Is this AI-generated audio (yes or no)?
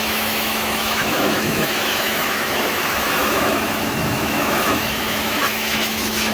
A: yes